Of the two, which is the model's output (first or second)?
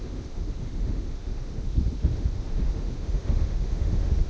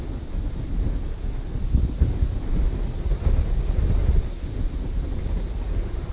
first